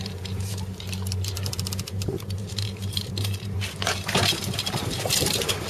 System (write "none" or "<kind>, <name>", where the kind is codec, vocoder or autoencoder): vocoder, BigVGAN v2